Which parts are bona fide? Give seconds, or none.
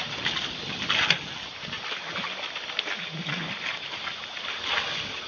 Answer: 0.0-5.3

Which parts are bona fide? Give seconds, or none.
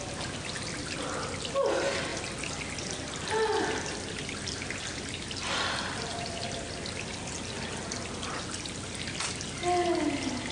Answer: 0.0-10.5